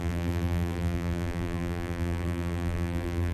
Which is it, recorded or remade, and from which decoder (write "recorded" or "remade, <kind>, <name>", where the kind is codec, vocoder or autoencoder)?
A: remade, vocoder, BigVGAN v2